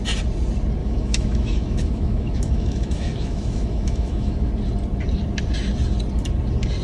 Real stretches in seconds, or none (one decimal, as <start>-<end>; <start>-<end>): 0.0-0.8; 4.5-6.8